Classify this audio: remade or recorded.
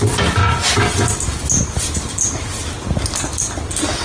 recorded